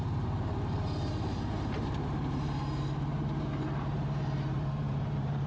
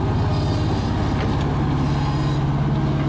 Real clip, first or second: second